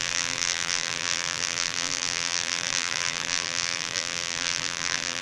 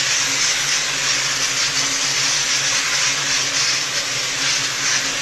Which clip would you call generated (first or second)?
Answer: first